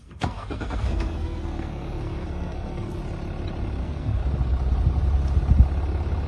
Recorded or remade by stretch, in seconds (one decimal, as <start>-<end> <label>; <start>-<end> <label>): 0.0-3.0 remade; 3.0-3.8 recorded; 3.8-4.2 remade; 4.2-6.3 recorded